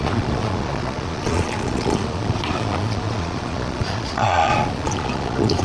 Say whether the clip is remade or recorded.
remade